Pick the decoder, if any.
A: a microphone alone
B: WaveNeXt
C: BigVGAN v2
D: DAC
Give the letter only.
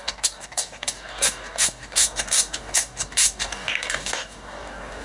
D